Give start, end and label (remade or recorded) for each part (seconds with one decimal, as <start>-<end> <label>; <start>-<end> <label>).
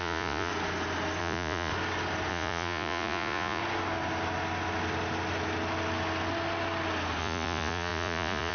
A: 0.0-0.5 remade; 0.5-1.2 recorded; 1.2-1.7 remade; 1.7-2.3 recorded; 2.3-3.6 remade; 3.6-7.2 recorded; 7.2-8.5 remade